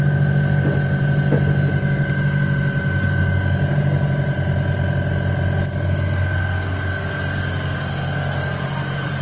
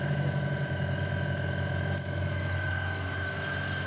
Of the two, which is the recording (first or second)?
first